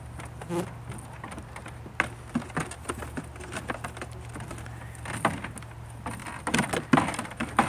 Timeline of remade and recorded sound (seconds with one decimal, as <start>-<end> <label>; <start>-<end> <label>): 0.0-7.7 recorded

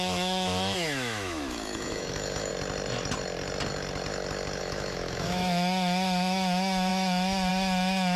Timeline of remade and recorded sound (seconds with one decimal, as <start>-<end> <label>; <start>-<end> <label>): 0.0-2.5 remade; 2.5-4.6 recorded; 4.6-8.2 remade

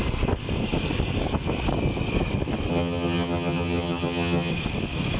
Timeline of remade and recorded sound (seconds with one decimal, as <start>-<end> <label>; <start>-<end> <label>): 0.0-2.7 recorded; 2.7-4.5 remade; 4.5-5.2 recorded